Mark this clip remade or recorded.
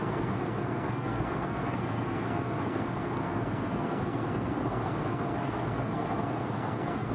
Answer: remade